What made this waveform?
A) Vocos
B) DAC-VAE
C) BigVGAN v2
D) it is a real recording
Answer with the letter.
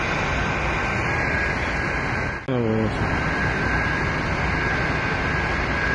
D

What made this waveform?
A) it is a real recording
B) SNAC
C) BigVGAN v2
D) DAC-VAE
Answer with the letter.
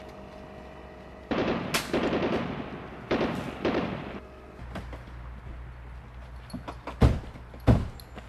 A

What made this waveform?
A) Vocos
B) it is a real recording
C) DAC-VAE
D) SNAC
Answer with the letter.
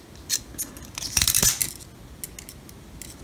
B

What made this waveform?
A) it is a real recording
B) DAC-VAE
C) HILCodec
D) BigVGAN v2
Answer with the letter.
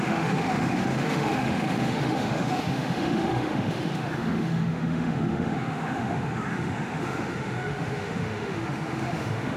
B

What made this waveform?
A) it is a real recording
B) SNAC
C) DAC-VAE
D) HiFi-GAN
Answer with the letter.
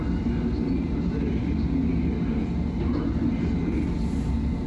A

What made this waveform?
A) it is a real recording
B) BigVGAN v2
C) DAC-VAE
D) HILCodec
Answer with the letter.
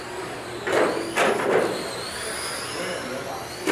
A